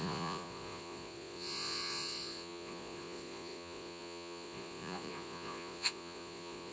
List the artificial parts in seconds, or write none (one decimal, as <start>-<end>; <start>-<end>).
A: 0.0-6.7